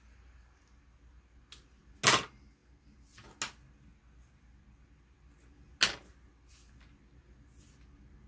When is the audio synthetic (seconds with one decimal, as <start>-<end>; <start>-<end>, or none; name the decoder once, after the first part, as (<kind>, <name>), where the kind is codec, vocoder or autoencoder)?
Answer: none